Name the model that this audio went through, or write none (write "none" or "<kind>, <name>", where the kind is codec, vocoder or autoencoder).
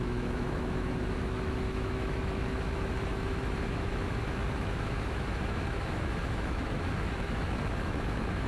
autoencoder, DAC-VAE